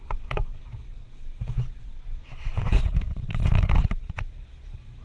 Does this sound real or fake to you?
fake